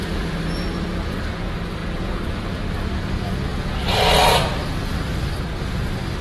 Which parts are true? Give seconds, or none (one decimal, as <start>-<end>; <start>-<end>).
0.0-1.8; 2.6-6.2